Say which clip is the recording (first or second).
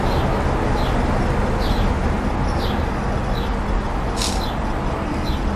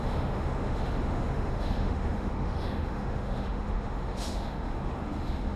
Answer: first